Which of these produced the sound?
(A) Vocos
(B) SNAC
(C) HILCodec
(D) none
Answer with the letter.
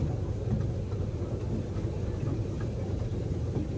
D